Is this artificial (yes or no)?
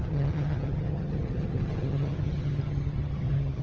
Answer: yes